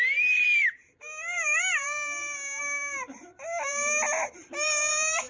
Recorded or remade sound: remade